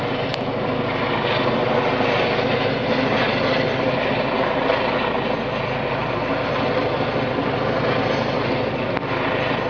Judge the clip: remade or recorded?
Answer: recorded